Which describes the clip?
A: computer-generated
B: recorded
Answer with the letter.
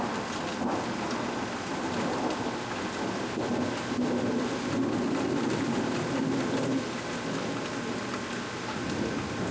B